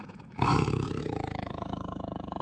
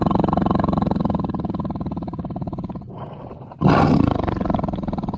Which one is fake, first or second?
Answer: first